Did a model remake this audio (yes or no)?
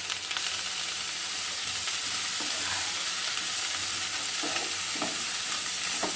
no